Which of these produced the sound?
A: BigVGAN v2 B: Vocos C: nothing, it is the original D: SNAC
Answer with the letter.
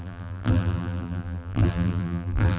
A